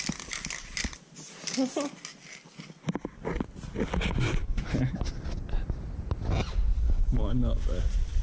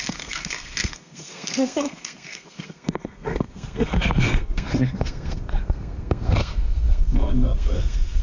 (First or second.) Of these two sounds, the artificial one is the second